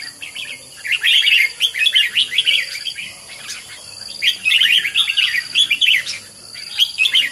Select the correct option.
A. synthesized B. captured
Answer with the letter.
B